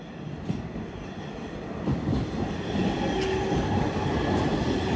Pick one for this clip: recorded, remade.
recorded